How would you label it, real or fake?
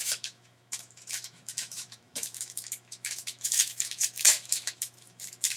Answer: fake